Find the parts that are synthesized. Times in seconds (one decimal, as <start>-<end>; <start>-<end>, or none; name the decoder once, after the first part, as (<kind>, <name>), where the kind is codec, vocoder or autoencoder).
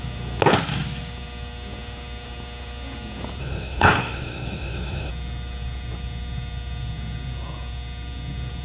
3.4-5.1 (codec, SNAC)